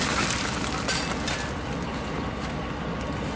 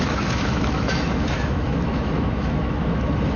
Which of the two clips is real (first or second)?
first